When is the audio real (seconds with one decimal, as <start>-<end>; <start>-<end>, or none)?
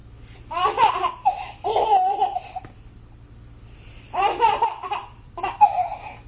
0.0-0.9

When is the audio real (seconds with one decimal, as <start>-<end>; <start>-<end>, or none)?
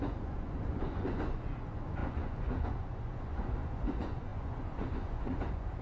none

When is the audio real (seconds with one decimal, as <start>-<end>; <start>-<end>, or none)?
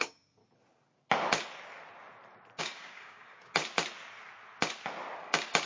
0.4-2.6; 3.6-5.2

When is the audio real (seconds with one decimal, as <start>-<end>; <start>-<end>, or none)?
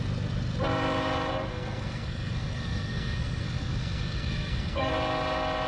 0.0-1.5; 4.9-5.7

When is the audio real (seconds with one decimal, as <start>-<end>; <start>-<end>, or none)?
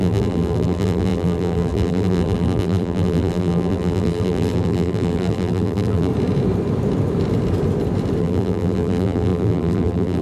6.1-8.2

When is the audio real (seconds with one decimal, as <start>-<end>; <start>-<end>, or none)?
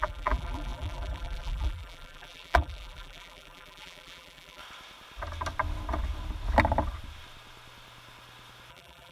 4.6-8.7